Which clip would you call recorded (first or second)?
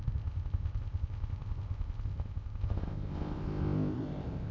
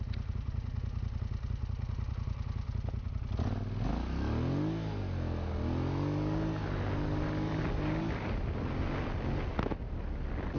second